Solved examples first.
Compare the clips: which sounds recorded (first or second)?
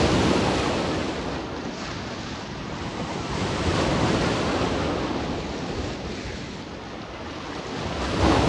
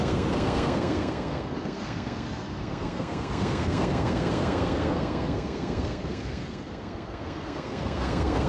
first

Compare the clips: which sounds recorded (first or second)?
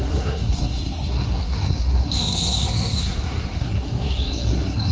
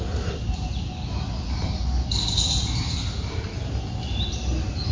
second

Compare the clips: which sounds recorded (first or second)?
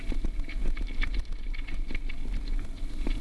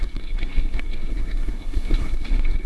first